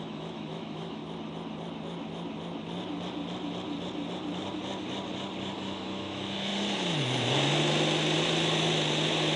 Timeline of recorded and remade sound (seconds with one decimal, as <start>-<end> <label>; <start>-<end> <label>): 0.0-1.0 remade; 1.0-5.6 recorded; 5.6-6.5 remade; 6.5-9.4 recorded

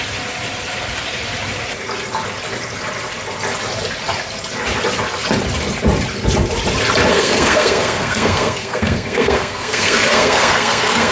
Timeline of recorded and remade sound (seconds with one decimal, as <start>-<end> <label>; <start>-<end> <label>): 0.0-7.1 recorded; 7.1-11.1 remade

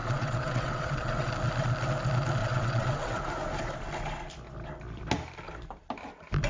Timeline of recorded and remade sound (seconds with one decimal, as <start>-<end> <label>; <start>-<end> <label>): 0.0-1.3 remade; 1.3-2.4 recorded; 2.4-3.2 remade; 3.2-6.5 recorded

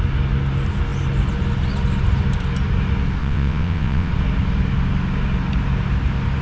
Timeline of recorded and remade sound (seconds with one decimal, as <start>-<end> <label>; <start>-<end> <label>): 0.0-3.2 recorded; 3.2-4.1 remade; 4.1-6.4 recorded

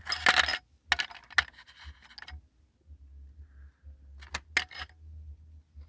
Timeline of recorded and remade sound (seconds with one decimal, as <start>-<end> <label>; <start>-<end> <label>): 0.0-5.9 recorded